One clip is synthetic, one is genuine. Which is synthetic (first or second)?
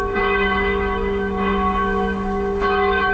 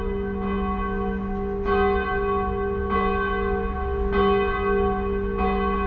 first